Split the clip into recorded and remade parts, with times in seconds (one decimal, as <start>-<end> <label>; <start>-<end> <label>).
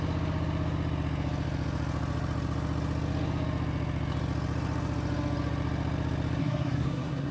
0.0-6.4 recorded; 6.4-7.3 remade